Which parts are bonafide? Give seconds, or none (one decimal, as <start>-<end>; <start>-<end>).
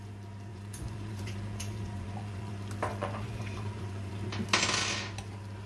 0.0-0.5; 2.5-2.9; 4.1-5.7